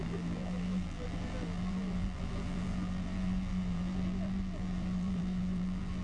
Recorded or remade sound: remade